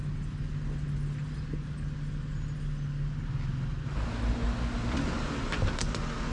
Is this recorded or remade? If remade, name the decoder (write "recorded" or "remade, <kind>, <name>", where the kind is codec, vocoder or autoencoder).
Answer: recorded